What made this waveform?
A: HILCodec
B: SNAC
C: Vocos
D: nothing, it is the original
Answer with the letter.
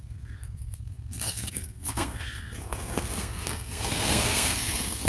B